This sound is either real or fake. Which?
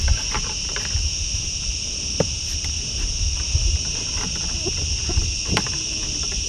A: real